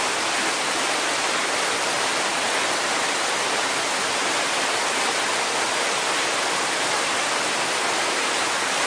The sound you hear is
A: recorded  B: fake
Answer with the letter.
A